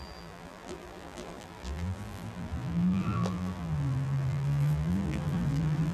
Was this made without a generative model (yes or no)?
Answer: no